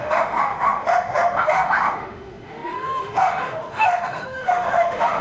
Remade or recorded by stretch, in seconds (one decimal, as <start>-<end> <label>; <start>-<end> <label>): 0.0-5.2 remade